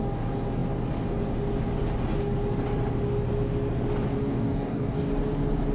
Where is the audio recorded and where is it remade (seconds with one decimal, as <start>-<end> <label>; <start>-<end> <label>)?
0.0-4.2 recorded; 4.2-5.1 remade; 5.1-5.7 recorded

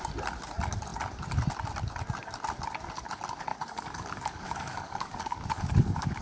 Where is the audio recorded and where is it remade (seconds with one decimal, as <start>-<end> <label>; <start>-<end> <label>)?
0.0-3.5 recorded; 3.5-6.2 remade

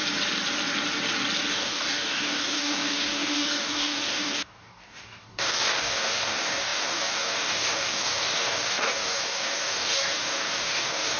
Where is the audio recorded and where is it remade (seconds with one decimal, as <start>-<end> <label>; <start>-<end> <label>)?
0.0-1.5 recorded; 1.5-11.2 remade

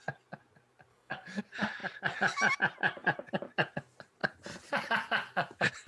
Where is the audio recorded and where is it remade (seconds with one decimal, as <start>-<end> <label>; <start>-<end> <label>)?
0.0-0.9 recorded; 0.9-1.4 remade; 1.4-5.9 recorded